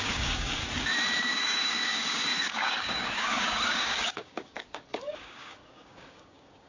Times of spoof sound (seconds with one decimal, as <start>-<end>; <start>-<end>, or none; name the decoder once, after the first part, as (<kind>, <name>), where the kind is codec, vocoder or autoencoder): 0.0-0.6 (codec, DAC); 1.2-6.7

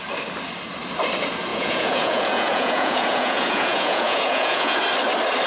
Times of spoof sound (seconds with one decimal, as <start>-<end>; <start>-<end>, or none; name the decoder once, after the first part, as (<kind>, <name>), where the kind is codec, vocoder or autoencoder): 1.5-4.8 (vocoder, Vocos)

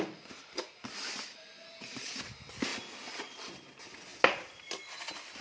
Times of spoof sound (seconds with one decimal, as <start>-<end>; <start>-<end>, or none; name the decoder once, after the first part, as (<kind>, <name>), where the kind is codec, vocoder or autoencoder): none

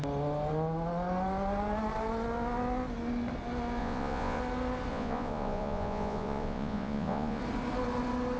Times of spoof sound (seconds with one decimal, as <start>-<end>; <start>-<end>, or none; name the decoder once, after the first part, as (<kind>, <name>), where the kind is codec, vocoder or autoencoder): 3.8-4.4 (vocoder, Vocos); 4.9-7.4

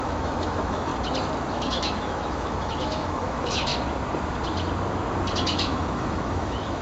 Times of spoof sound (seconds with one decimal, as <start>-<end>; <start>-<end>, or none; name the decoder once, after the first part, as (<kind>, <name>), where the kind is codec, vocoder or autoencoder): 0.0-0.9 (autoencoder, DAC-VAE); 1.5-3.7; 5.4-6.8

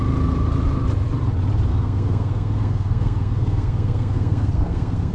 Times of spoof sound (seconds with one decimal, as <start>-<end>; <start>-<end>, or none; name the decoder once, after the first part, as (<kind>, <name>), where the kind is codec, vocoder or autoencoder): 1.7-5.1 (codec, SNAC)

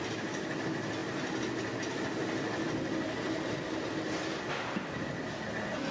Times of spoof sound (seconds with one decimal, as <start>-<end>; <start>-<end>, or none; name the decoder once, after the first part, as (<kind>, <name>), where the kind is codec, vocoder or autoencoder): none

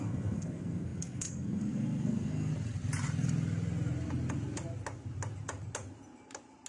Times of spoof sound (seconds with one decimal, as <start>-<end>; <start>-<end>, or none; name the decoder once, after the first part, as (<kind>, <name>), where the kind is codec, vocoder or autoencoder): 0.0-2.5 (codec, SNAC)